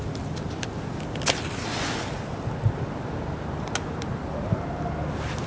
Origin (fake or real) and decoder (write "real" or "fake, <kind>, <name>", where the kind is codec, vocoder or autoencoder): real